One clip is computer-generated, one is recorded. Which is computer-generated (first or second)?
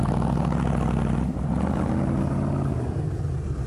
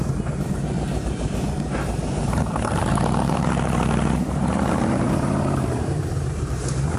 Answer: second